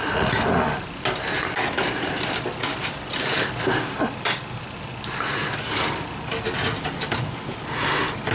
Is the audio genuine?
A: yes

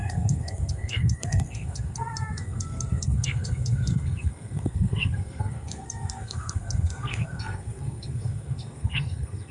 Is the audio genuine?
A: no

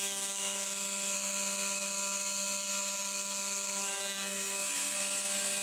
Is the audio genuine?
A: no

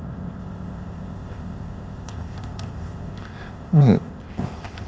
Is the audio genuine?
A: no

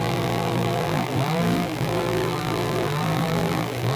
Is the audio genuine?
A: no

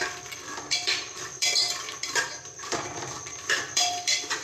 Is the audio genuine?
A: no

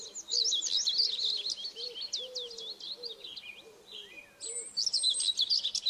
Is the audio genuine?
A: yes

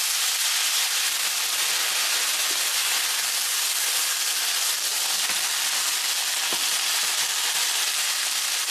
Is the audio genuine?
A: yes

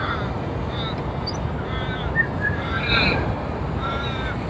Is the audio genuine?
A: yes